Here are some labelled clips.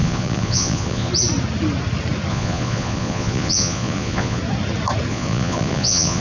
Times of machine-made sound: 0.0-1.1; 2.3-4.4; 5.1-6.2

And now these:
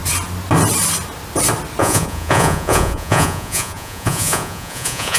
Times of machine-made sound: 1.8-5.2

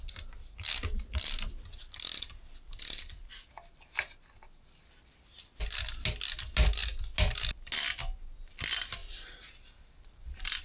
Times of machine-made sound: none

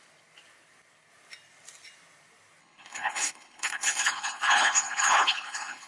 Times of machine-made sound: 2.6-5.9